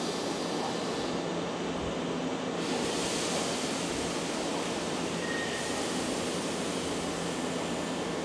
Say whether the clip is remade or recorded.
recorded